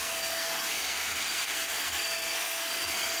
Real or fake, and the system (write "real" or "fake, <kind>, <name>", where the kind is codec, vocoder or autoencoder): fake, codec, SNAC